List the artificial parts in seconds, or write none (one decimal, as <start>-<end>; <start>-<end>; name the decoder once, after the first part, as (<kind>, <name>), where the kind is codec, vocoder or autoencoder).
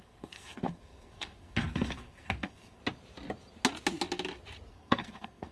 0.0-2.8 (codec, SNAC); 4.7-5.5